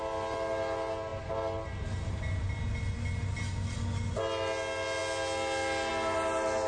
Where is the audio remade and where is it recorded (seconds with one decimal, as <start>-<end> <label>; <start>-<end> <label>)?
0.0-6.7 recorded